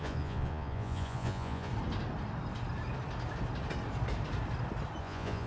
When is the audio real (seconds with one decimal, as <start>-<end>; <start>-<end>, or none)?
1.7-5.0

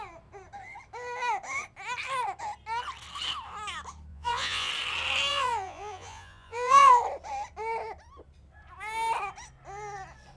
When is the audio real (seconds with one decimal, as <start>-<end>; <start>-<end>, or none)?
0.0-4.1; 4.7-5.3; 6.9-10.4

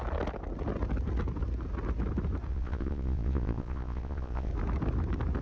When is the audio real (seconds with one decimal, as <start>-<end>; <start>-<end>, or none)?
0.0-2.5; 4.5-5.4

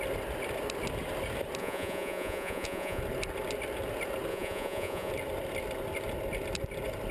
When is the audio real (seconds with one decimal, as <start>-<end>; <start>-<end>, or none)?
0.0-1.6; 3.0-4.3; 5.1-7.1

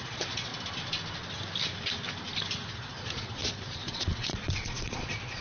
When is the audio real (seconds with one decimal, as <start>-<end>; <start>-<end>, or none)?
0.5-2.7

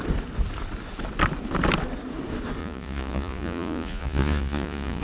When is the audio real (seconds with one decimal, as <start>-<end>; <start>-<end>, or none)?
0.0-2.6

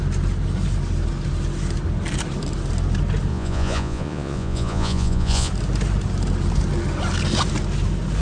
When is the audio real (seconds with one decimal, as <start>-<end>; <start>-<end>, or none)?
0.0-3.3; 5.5-8.2

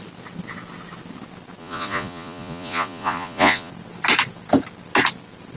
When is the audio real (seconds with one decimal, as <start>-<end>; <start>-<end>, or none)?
0.0-1.6; 3.7-5.6